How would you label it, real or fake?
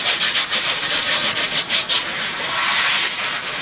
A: real